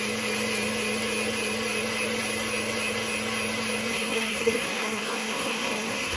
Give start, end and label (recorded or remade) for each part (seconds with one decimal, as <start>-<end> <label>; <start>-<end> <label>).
0.0-3.9 recorded; 3.9-6.2 remade